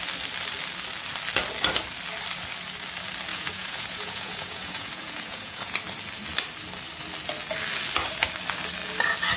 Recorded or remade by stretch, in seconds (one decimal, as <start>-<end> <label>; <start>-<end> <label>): 0.0-3.3 recorded; 3.3-5.8 remade; 5.8-9.4 recorded